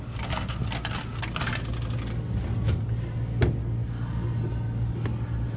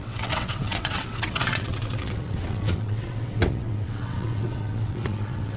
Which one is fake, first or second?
second